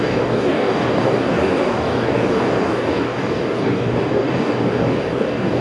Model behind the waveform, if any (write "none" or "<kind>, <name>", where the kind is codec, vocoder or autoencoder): codec, DAC